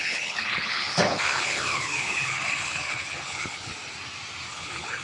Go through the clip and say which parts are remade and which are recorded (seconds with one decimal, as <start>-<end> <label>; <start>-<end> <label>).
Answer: 0.0-3.7 remade; 3.7-4.5 recorded; 4.5-5.0 remade